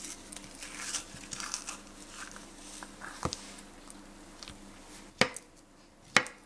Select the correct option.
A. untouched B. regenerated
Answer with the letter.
A